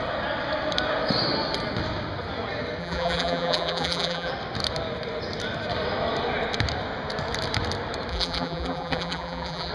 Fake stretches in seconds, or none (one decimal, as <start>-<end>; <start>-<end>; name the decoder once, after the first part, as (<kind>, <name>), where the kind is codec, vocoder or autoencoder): 2.8-4.3 (vocoder, BigVGAN v2); 8.1-9.7